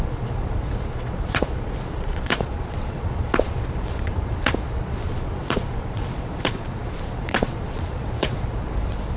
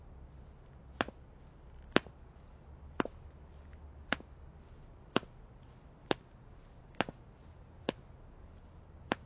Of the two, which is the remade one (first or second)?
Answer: first